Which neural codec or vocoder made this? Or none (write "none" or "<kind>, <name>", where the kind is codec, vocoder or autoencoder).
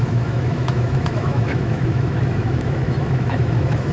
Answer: autoencoder, DAC-VAE